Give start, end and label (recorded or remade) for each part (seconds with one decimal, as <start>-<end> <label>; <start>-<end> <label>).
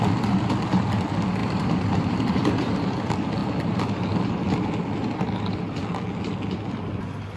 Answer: 0.0-1.4 recorded; 1.4-2.7 remade; 2.7-7.4 recorded